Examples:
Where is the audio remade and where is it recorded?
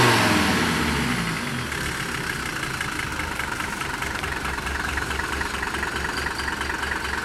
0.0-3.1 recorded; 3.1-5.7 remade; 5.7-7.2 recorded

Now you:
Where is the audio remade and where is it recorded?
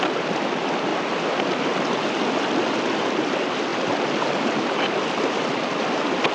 0.0-3.7 recorded; 3.7-5.0 remade; 5.0-6.3 recorded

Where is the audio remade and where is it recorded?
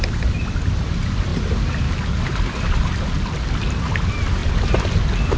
0.0-5.4 recorded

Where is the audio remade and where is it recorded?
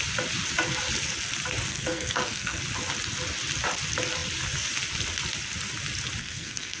0.0-1.7 recorded; 1.7-2.6 remade; 2.6-6.2 recorded; 6.2-6.8 remade